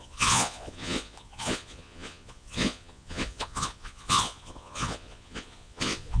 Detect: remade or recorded remade